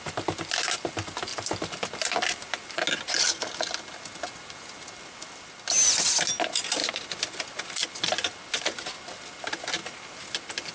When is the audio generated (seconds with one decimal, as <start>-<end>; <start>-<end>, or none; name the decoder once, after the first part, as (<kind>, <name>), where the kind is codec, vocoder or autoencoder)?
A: none